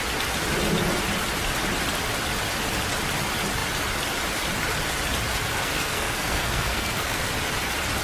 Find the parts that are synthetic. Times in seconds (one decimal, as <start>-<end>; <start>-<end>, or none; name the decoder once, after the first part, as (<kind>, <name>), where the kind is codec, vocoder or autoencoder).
5.5-7.2 (codec, SNAC)